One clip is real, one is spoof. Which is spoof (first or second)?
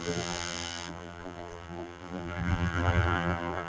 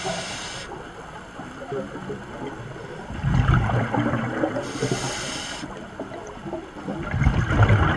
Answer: first